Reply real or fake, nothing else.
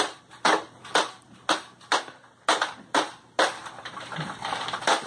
real